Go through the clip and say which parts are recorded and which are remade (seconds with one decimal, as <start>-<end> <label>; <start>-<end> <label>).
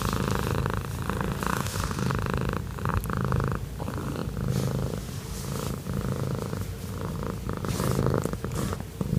0.0-1.5 recorded; 1.5-2.1 remade; 2.1-9.2 recorded